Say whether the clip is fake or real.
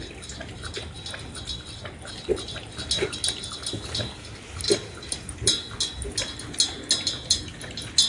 real